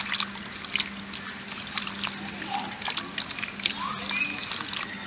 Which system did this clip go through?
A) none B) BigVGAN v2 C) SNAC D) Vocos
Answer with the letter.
A